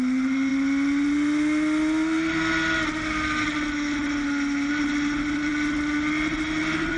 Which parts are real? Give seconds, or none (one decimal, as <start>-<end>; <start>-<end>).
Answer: 0.0-7.0